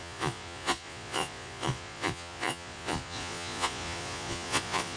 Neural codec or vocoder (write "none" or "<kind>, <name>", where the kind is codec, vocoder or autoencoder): vocoder, Vocos